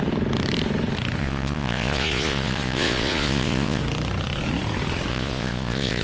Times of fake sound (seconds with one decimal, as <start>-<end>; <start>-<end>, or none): 1.2-3.8; 5.1-6.0